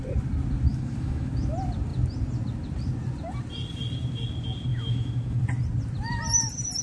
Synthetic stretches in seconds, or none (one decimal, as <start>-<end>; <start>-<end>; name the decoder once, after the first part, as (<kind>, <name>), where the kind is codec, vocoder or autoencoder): 0.7-1.3 (autoencoder, DAC-VAE); 4.7-5.4